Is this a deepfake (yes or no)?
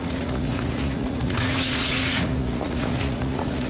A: yes